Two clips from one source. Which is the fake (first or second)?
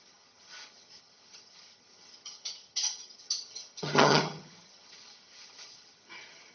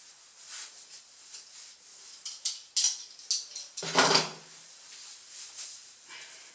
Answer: first